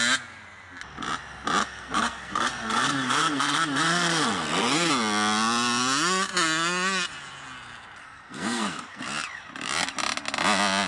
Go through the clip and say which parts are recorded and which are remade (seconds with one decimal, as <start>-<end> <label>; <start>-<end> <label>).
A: 0.0-1.6 recorded; 1.6-4.9 remade; 4.9-8.0 recorded; 8.0-9.0 remade; 9.0-10.9 recorded